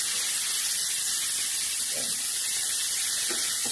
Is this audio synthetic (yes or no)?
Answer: no